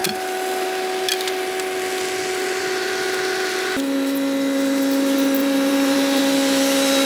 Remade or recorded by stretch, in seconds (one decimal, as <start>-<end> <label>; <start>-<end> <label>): 0.0-5.4 recorded; 5.4-6.2 remade; 6.2-7.1 recorded